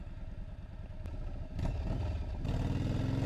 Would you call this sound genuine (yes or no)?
yes